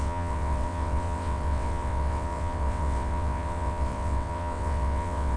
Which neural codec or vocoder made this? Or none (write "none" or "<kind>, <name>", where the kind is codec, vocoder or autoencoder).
vocoder, WaveNeXt